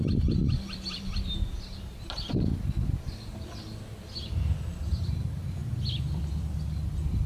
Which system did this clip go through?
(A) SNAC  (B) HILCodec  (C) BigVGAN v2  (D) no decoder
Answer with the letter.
D